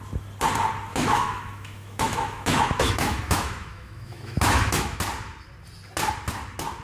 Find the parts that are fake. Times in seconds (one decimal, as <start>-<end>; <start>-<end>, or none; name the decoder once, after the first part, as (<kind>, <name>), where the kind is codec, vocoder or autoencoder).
0.9-5.0 (autoencoder, DAC-VAE)